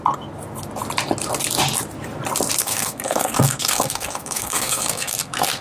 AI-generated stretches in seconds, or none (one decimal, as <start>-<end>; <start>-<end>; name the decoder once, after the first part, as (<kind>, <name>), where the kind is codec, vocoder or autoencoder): 2.6-5.6 (codec, SNAC)